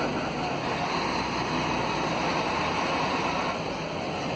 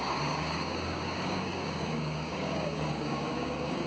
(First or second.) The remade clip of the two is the second